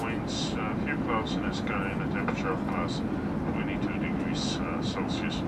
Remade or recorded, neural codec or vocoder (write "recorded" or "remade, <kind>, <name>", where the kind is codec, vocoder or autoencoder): recorded